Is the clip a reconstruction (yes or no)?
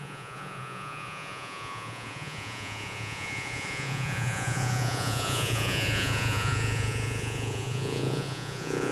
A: yes